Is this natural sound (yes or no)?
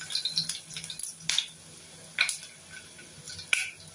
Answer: yes